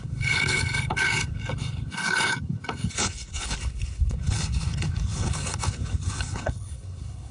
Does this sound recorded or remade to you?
remade